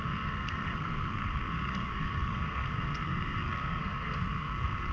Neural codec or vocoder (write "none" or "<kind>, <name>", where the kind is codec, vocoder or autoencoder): codec, SNAC